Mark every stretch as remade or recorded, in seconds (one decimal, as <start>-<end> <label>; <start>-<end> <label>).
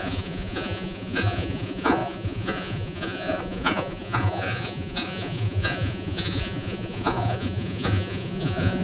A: 0.0-8.8 remade